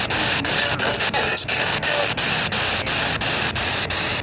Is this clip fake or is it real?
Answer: real